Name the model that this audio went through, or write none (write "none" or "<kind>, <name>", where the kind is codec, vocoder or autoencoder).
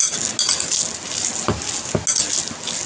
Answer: none